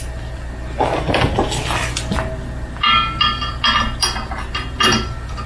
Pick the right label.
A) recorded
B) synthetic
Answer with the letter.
A